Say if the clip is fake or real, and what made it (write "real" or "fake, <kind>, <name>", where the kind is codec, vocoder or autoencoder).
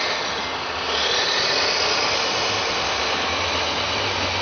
real